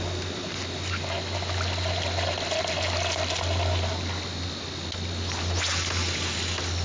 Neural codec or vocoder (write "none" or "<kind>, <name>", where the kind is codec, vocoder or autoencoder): none